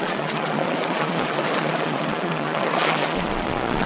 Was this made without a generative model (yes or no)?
no